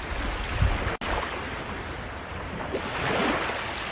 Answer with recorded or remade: recorded